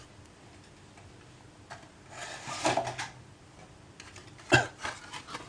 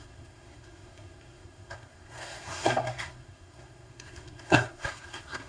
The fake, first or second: second